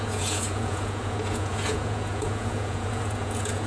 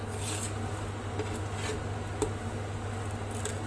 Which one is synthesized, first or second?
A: first